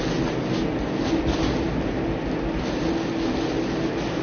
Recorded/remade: recorded